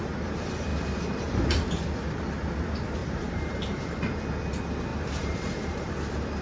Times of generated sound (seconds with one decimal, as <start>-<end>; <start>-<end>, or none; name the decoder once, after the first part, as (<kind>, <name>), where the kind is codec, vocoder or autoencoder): 3.0-3.9 (vocoder, BigVGAN v2); 4.9-5.9